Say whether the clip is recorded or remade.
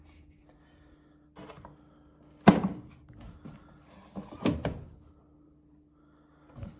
recorded